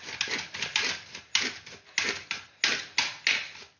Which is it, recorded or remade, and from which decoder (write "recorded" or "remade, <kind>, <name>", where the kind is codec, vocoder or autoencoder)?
recorded